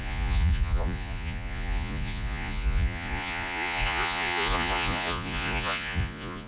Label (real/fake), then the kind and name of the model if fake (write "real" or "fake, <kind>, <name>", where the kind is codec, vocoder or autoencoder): fake, vocoder, Vocos